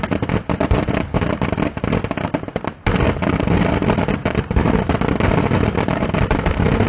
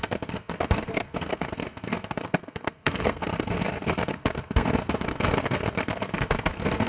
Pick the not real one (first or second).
second